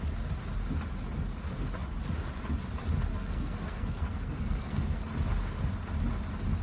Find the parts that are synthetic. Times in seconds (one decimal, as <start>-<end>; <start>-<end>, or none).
3.1-5.0